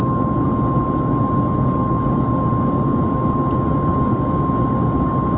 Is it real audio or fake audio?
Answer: real